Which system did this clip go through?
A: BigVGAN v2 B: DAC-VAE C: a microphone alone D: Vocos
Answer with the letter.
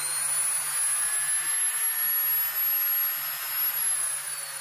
C